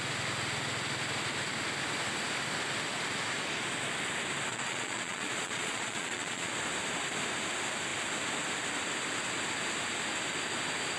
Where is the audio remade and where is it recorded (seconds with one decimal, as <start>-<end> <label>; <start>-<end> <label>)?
0.0-4.5 recorded; 4.5-6.5 remade; 6.5-11.0 recorded